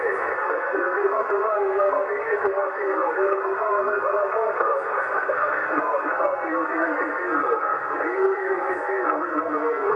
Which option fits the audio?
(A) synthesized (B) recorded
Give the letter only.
A